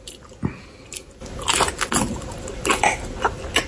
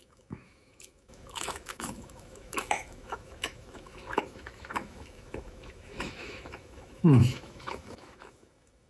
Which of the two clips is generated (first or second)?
second